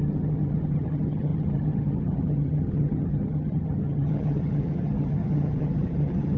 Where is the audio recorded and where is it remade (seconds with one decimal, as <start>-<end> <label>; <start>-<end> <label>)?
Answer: 0.0-6.4 remade